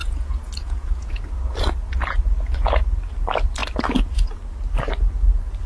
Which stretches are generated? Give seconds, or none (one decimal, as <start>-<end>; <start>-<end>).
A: 0.0-1.2